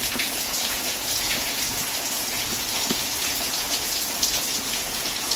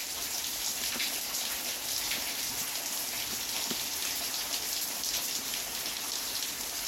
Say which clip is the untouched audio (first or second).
second